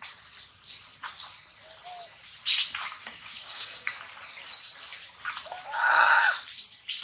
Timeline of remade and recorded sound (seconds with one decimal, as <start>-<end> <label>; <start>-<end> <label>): 0.0-3.0 recorded; 3.0-3.9 remade; 3.9-7.0 recorded

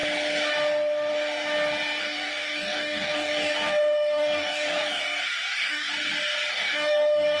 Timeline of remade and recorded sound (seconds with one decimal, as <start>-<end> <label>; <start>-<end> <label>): 0.0-2.0 recorded; 2.0-5.9 remade; 5.9-6.5 recorded; 6.5-7.4 remade

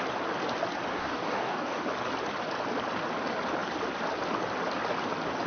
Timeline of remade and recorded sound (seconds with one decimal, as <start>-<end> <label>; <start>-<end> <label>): 0.0-0.9 recorded; 0.9-1.8 remade; 1.8-5.5 recorded

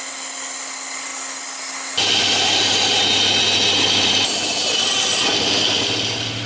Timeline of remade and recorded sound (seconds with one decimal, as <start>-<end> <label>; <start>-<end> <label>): 0.0-6.5 recorded

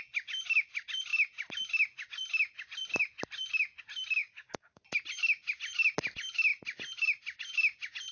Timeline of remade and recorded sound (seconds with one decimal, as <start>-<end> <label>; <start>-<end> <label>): 0.0-4.2 recorded; 4.2-4.8 remade; 4.8-8.1 recorded

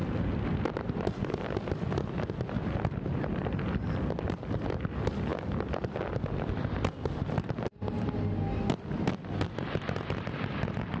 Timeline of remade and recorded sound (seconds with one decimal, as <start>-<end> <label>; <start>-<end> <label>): 0.0-11.0 recorded

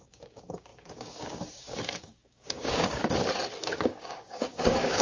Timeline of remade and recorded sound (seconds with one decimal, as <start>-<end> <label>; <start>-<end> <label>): 0.0-3.0 remade; 3.0-3.6 recorded; 3.6-5.0 remade